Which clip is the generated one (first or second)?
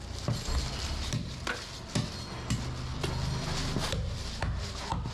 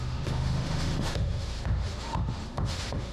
second